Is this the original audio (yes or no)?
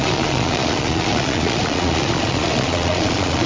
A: no